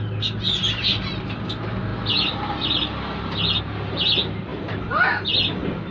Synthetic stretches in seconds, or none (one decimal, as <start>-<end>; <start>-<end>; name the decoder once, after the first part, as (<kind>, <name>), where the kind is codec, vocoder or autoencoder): none